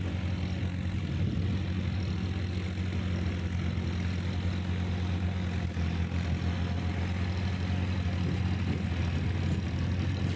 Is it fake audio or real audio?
real